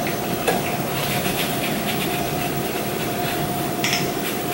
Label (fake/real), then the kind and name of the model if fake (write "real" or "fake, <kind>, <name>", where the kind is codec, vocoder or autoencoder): fake, vocoder, BigVGAN v2